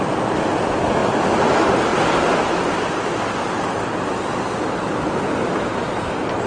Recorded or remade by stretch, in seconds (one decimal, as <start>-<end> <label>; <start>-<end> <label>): 0.0-6.5 recorded